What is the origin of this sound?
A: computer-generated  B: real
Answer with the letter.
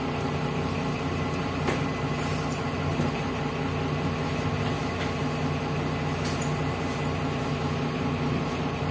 B